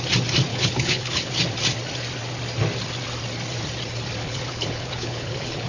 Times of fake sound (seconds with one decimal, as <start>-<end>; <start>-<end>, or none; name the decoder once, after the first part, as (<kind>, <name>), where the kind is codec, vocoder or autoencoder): 0.5-1.3 (codec, HILCodec); 4.2-5.7